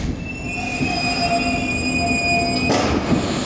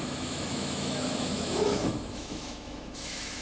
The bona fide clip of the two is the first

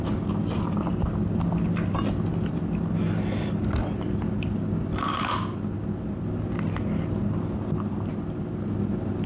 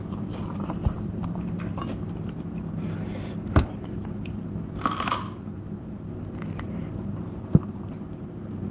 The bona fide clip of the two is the first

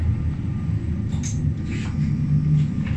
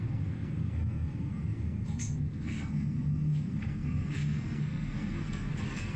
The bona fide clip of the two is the first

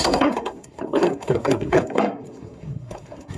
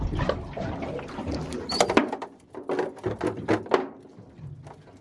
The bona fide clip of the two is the second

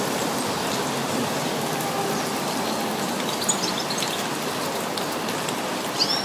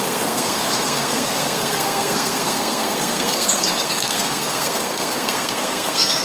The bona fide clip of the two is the first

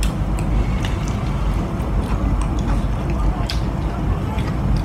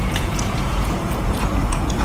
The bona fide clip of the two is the first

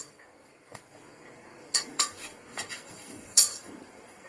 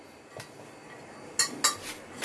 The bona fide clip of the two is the second